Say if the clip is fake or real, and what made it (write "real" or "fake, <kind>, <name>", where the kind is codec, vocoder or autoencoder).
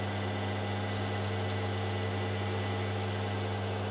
real